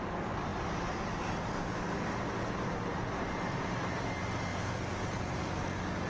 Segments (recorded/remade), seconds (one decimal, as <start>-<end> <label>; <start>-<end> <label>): 0.0-4.5 recorded; 4.5-5.4 remade; 5.4-6.1 recorded